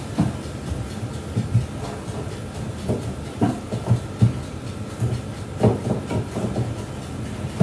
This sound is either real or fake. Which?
fake